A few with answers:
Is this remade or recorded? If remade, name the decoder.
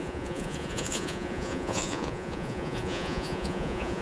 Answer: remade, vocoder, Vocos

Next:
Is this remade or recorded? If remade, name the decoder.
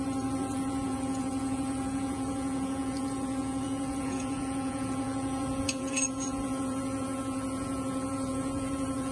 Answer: remade, vocoder, Vocos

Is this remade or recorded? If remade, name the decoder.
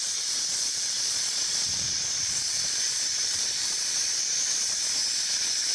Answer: remade, vocoder, Vocos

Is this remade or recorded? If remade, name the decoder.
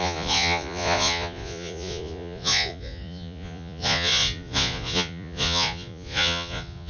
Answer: remade, vocoder, Vocos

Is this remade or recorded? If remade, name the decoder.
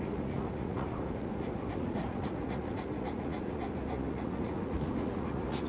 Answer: remade, vocoder, Vocos